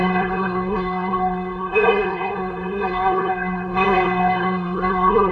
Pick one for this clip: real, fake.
fake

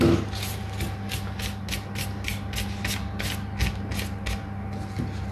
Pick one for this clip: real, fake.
real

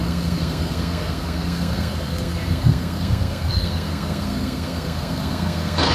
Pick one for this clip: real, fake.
fake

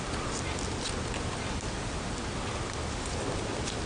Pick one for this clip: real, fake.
real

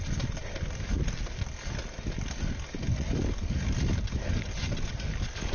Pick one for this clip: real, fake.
real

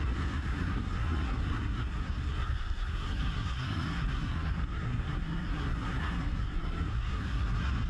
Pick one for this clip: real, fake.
fake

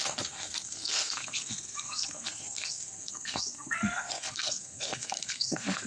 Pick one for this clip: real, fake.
fake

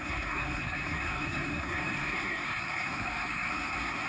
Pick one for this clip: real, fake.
fake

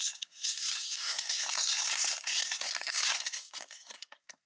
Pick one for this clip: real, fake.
fake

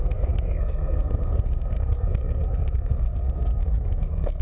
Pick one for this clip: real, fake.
fake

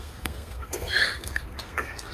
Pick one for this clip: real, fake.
fake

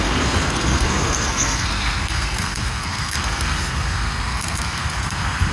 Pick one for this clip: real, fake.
fake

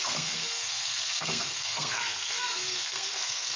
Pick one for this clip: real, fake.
fake